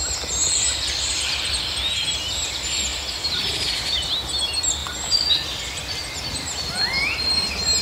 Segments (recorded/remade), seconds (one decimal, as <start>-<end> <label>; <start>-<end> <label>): 0.0-4.8 recorded; 4.8-5.8 remade; 5.8-7.8 recorded